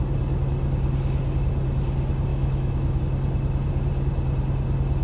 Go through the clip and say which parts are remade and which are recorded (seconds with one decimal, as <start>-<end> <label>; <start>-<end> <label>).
0.0-2.3 recorded; 2.3-3.0 remade; 3.0-5.0 recorded